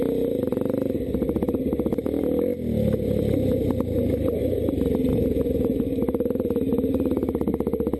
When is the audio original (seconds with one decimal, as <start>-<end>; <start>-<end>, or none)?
0.0-8.0